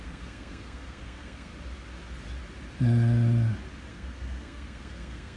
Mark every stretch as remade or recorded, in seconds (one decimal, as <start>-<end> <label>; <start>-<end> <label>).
0.0-1.5 remade; 1.5-3.9 recorded; 3.9-5.4 remade

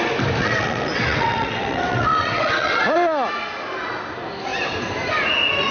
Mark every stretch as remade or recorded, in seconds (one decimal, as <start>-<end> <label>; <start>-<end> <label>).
0.0-0.4 recorded; 0.4-2.8 remade; 2.8-5.7 recorded

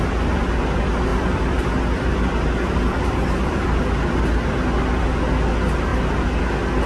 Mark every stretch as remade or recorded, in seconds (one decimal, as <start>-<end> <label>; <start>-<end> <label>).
0.0-1.1 recorded; 1.1-5.0 remade; 5.0-6.9 recorded

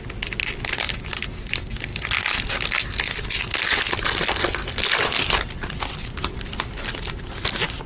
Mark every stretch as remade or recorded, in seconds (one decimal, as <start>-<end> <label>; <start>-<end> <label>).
0.0-7.9 recorded

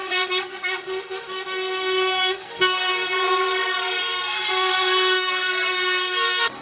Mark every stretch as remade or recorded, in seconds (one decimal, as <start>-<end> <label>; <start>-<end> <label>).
0.0-6.6 remade

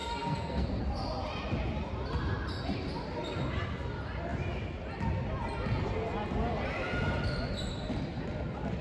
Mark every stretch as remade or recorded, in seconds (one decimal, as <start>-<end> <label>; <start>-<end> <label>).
0.0-0.8 remade; 0.8-8.8 recorded

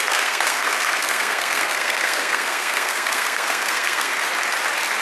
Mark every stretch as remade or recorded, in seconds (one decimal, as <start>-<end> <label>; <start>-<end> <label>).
0.0-4.1 remade; 4.1-5.0 recorded